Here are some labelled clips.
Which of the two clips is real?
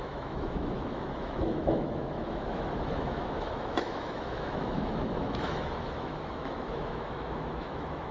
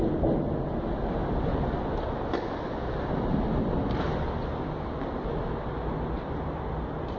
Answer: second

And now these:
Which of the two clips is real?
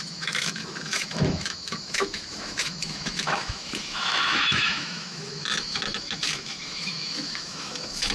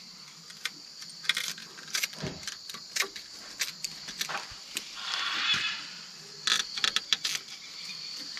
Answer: second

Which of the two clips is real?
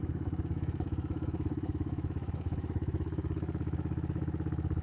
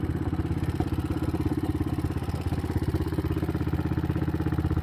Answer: second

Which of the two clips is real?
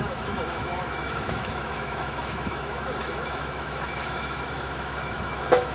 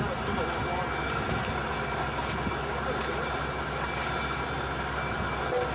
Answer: second